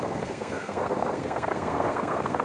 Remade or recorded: remade